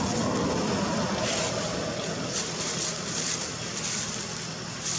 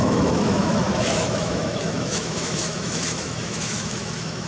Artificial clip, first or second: second